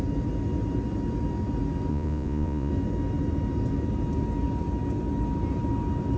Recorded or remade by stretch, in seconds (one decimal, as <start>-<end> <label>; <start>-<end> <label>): 0.0-1.9 recorded; 1.9-2.7 remade; 2.7-6.2 recorded